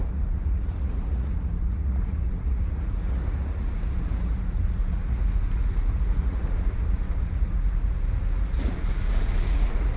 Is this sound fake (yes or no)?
yes